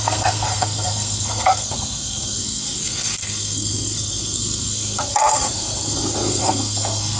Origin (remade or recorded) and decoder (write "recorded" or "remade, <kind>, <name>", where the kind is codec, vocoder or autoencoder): remade, codec, SNAC